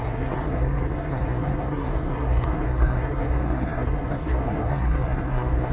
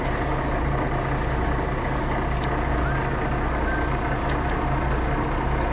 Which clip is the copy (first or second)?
first